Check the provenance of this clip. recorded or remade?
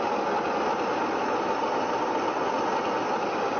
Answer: recorded